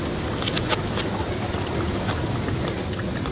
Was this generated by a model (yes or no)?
no